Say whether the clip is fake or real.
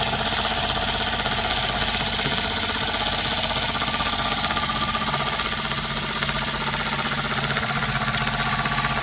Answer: real